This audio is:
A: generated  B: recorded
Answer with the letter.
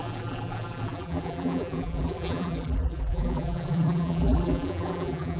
A